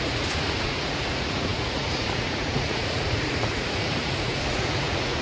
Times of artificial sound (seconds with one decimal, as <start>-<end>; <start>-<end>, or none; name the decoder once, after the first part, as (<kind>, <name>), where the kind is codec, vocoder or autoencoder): 0.0-5.2 (vocoder, Vocos)